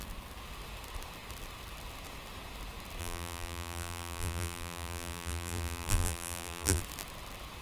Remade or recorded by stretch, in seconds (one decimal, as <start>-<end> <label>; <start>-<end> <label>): 0.0-3.0 recorded; 3.0-6.8 remade; 6.8-7.6 recorded